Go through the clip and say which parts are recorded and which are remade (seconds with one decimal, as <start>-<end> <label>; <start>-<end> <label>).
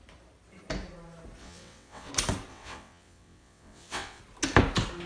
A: 0.0-1.4 recorded; 1.4-2.1 remade; 2.1-2.5 recorded; 2.5-4.2 remade; 4.2-5.1 recorded